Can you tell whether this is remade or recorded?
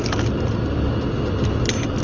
recorded